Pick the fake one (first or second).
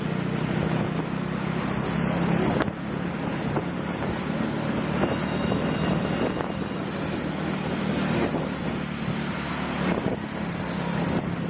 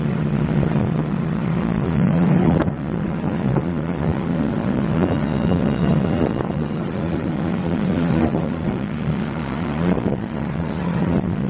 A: second